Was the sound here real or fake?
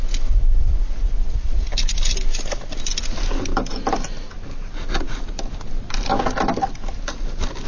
real